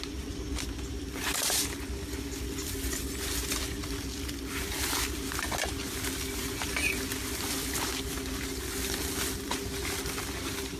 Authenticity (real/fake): real